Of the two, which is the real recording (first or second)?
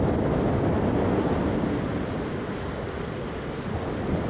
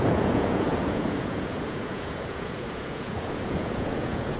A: first